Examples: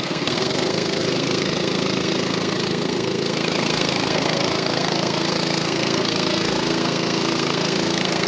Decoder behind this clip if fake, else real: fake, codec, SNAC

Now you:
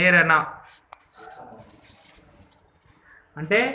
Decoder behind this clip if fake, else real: real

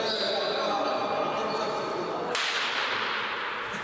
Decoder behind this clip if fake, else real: real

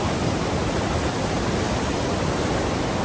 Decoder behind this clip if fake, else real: real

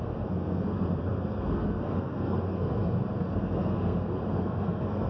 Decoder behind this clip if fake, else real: fake, codec, SNAC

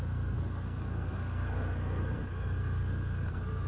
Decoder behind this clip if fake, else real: fake, codec, SNAC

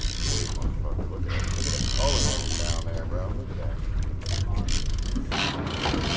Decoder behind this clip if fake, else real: real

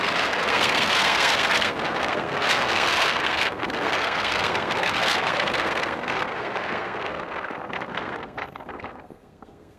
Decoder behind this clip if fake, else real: fake, codec, SNAC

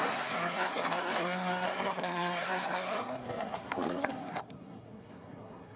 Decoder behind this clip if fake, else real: fake, codec, SNAC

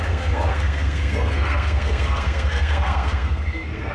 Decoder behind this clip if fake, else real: fake, codec, SNAC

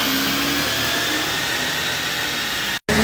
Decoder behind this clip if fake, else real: real